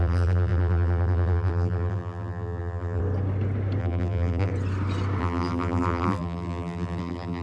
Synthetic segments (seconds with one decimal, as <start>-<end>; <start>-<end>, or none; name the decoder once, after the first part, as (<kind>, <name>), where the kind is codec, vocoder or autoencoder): 0.0-3.0 (vocoder, BigVGAN v2); 3.8-4.5; 5.2-7.4